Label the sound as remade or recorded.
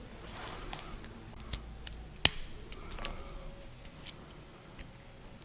recorded